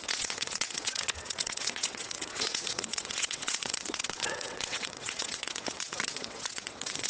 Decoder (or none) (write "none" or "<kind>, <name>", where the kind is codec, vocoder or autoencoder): vocoder, WaveNeXt